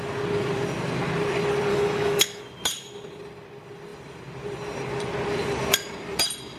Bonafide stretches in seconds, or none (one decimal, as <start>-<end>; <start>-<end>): 0.0-1.7; 2.4-6.6